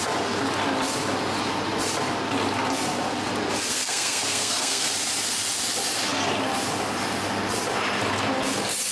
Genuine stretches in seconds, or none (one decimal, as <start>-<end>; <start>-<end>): 0.0-3.7; 4.9-8.9